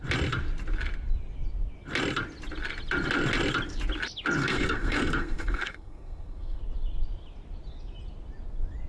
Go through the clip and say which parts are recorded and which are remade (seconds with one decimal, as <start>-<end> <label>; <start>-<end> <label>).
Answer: 0.0-4.4 recorded; 4.4-6.6 remade; 6.6-8.9 recorded